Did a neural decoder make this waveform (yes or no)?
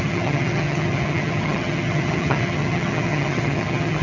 yes